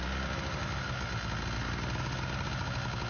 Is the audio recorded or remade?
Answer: recorded